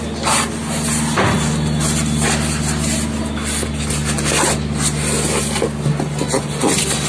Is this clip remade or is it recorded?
recorded